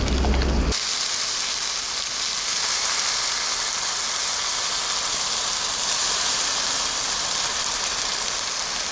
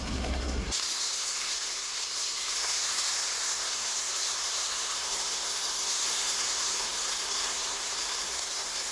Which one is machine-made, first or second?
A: second